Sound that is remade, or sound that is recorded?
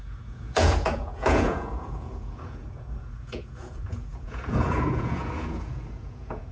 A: remade